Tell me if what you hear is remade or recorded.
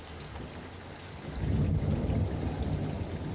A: recorded